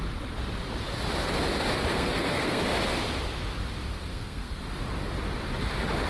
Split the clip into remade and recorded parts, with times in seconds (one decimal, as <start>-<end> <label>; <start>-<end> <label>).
0.0-1.9 recorded; 1.9-2.6 remade; 2.6-4.1 recorded; 4.1-4.6 remade; 4.6-6.1 recorded